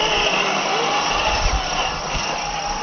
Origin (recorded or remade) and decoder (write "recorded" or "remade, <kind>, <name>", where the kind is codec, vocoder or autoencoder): recorded